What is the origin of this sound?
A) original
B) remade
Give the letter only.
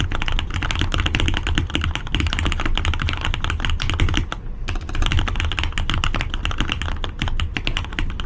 A